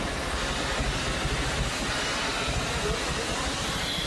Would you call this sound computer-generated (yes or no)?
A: no